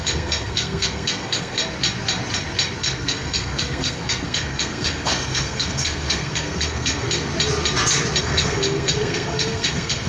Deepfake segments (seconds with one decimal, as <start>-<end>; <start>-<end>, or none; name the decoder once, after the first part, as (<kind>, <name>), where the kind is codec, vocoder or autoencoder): 0.0-1.6 (codec, SNAC); 2.8-7.3; 8.2-10.1